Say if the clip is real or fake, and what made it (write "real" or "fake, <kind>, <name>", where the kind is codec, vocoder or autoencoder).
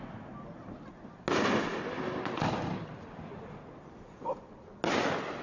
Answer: real